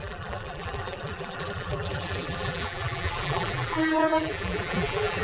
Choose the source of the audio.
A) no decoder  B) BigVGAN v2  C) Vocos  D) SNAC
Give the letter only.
B